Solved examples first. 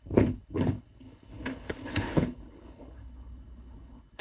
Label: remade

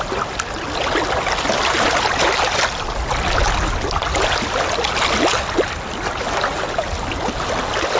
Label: recorded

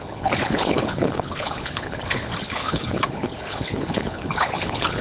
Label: remade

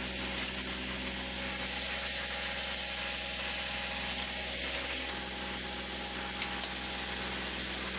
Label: recorded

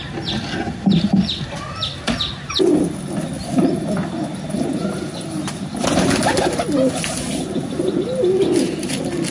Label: recorded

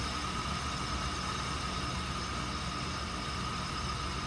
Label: recorded